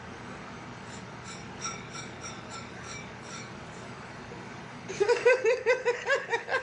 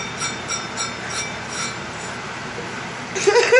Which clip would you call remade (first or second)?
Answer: first